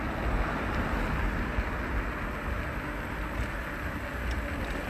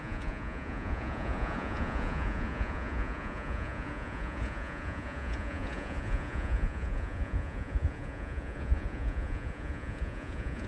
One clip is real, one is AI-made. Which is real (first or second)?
first